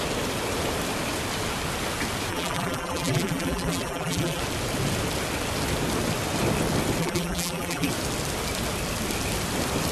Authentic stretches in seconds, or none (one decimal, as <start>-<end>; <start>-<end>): 0.0-2.3; 4.4-7.0; 7.9-9.9